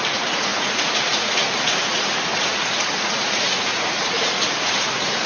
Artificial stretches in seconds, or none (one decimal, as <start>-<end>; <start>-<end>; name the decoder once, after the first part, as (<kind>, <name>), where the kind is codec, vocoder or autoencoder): 0.0-5.3 (vocoder, Vocos)